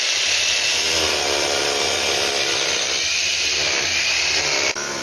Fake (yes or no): no